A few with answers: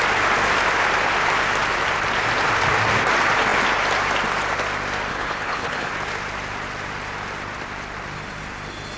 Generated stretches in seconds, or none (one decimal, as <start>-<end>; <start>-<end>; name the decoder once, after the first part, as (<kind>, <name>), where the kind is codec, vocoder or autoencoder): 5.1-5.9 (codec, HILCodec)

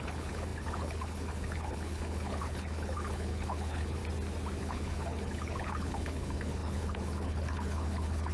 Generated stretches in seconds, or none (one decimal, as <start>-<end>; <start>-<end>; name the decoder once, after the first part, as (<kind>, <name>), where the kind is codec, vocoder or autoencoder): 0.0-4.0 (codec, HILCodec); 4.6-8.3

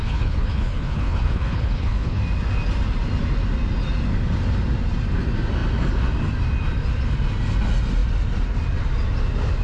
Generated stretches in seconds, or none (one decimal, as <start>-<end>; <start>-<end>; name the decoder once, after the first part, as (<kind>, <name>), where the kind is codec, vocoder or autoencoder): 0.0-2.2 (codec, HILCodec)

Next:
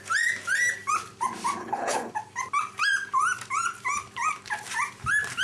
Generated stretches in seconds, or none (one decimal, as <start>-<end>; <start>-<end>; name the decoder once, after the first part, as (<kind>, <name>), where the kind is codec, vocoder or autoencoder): 1.6-2.1 (codec, HILCodec)

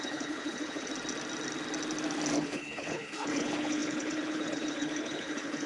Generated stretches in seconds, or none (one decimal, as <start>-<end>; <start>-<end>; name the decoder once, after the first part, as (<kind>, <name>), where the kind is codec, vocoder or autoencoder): 0.0-0.9 (codec, HILCodec); 2.4-5.7

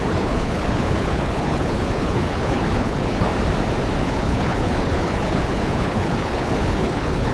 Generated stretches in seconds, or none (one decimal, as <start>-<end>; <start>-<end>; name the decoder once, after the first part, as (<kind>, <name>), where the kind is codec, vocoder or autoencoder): 0.0-3.3 (codec, HILCodec); 4.0-7.3